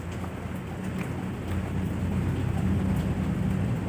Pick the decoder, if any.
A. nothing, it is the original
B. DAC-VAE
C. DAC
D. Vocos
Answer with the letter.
A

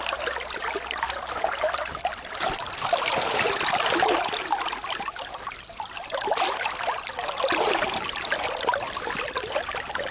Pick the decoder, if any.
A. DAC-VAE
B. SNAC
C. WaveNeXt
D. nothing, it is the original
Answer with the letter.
D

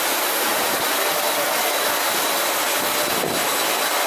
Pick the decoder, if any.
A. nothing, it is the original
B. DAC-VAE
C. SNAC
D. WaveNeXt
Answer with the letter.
A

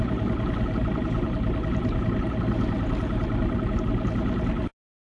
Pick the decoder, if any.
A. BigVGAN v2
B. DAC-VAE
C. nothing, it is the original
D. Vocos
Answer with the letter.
C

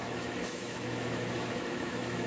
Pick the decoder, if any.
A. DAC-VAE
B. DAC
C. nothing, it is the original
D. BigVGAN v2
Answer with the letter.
A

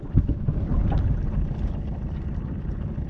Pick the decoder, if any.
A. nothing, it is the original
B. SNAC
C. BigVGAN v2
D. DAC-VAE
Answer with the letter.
A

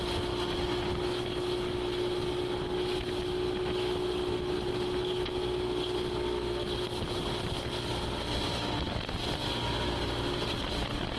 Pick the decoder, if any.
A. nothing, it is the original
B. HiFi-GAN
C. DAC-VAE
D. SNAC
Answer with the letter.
A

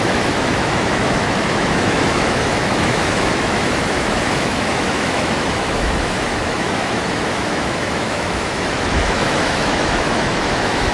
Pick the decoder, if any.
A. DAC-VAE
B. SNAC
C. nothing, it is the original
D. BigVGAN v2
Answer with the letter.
A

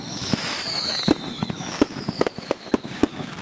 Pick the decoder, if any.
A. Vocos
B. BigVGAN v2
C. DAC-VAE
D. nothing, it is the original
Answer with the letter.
C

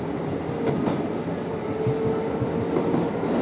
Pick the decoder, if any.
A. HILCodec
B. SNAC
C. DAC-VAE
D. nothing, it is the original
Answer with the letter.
D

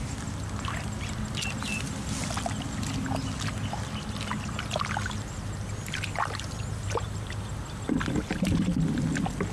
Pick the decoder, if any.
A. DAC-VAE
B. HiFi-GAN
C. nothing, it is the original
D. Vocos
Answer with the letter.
C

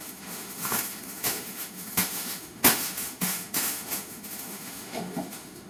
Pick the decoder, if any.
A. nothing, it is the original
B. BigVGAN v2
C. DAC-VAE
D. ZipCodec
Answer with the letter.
C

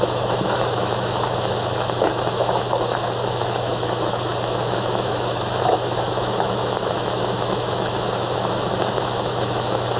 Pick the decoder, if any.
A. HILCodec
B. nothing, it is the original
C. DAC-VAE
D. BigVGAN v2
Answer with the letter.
C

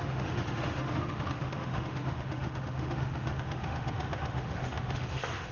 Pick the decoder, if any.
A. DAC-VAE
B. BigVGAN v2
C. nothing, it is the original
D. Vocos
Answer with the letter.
A